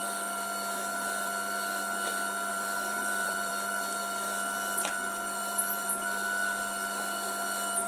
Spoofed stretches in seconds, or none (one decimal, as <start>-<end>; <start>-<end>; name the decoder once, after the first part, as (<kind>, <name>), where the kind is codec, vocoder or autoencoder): 2.5-3.5 (vocoder, BigVGAN v2); 5.4-5.9